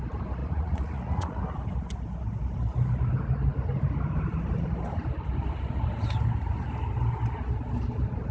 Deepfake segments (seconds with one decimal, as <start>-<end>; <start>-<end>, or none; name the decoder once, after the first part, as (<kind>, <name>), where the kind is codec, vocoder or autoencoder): 0.4-1.4 (vocoder, Vocos)